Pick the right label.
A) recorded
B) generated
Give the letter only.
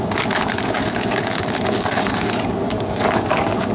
B